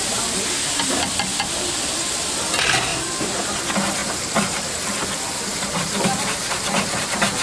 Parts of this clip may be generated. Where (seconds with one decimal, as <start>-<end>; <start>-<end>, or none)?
1.3-1.9; 4.0-4.8; 5.5-7.0